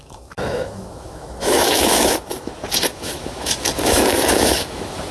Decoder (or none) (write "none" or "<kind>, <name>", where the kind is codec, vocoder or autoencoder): autoencoder, DAC-VAE